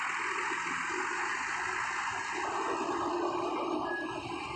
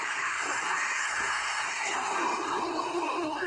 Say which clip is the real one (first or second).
first